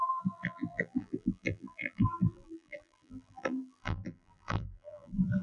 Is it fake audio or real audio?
fake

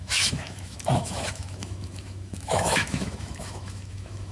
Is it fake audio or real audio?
fake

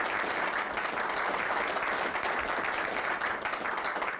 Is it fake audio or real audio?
real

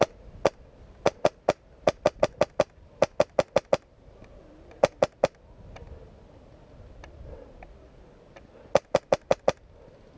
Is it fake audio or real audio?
real